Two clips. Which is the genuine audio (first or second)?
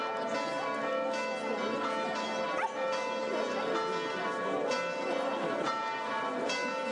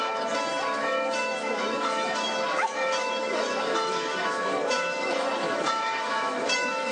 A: first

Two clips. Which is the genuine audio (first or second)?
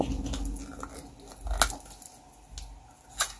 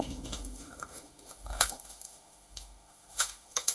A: first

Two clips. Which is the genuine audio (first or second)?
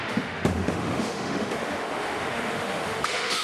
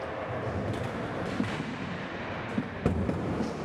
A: second